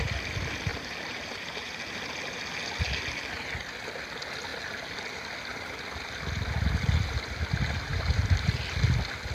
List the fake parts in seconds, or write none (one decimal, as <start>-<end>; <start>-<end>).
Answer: 0.7-1.9; 7.9-8.6

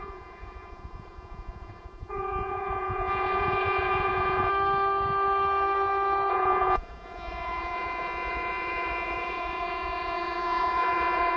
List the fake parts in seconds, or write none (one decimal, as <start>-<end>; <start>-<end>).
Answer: 0.0-4.5; 6.3-11.4

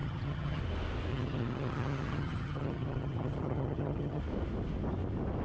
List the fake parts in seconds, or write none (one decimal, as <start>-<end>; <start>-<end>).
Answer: 0.0-0.6; 1.1-4.2

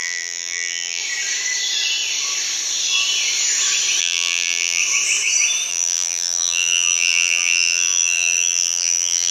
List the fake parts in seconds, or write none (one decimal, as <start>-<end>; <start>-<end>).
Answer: 0.0-1.0; 4.0-4.8; 5.7-9.3